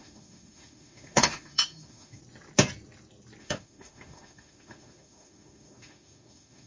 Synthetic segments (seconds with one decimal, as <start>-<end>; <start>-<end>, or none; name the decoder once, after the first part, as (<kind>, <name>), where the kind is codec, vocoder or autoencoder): 0.0-2.2 (autoencoder, DAC-VAE); 3.4-6.7